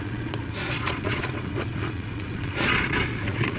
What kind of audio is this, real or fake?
fake